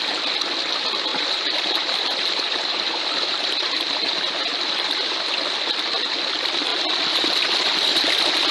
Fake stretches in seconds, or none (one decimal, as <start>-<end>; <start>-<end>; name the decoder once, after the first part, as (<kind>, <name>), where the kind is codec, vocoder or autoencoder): 1.1-5.3 (vocoder, BigVGAN v2)